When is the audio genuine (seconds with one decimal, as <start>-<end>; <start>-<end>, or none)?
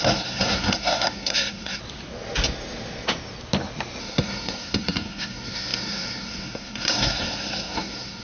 1.8-4.0